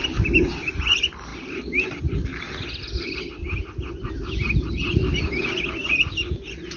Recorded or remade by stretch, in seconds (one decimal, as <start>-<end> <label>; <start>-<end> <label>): 0.0-6.8 recorded